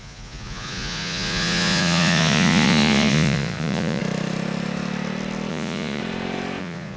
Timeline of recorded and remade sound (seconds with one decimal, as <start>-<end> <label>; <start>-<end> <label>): 0.0-4.0 remade; 4.0-5.5 recorded; 5.5-6.0 remade; 6.0-6.6 recorded; 6.6-7.0 remade